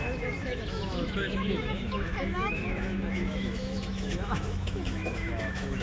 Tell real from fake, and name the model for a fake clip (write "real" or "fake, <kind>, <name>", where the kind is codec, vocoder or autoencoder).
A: fake, autoencoder, DAC-VAE